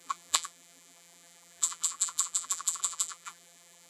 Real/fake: fake